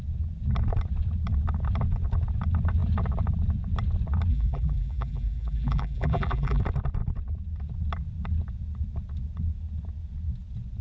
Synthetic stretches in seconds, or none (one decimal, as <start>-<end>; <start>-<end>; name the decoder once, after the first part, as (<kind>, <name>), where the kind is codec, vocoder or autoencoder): 4.3-6.6 (vocoder, BigVGAN v2)